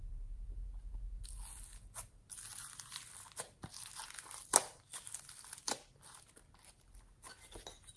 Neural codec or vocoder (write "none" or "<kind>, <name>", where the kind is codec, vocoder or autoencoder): none